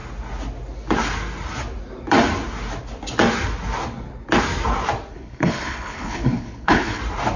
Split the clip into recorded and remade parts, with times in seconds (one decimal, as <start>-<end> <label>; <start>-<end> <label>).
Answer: 0.0-5.1 recorded; 5.1-7.0 remade; 7.0-7.4 recorded